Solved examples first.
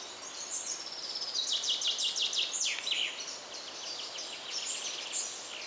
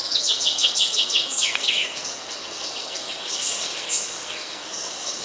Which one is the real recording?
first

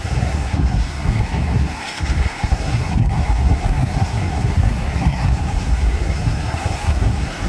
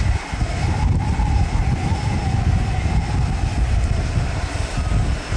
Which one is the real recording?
second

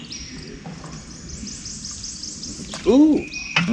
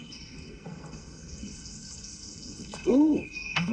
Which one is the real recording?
first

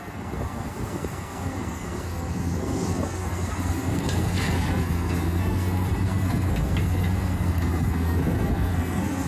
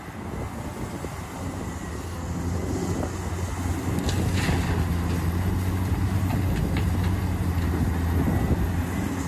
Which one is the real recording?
second